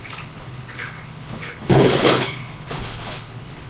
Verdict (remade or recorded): remade